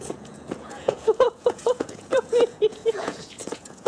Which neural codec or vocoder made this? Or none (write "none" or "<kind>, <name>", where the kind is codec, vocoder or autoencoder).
vocoder, Vocos